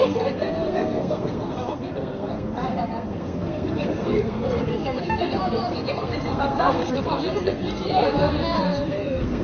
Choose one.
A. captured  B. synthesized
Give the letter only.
B